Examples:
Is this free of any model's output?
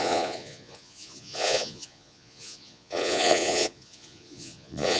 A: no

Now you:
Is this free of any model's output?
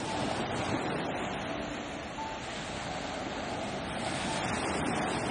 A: yes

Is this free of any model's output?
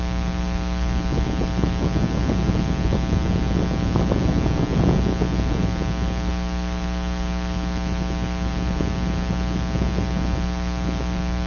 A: yes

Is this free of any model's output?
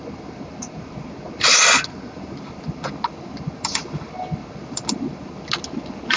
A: yes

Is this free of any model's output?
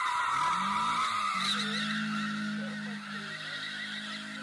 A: yes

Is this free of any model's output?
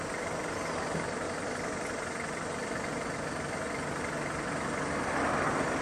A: yes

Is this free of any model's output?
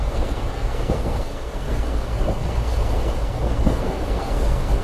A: no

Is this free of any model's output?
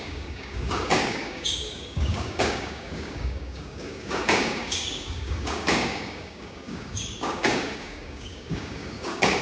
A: no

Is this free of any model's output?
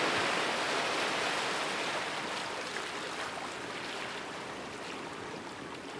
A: yes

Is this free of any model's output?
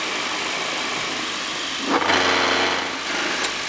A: yes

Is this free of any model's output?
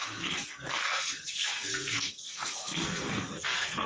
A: no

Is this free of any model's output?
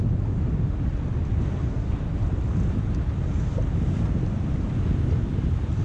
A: yes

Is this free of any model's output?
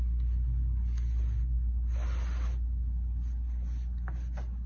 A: yes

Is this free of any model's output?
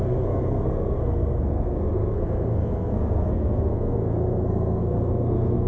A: no